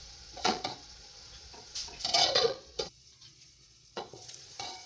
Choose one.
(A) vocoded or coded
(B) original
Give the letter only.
A